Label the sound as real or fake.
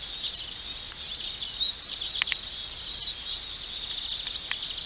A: real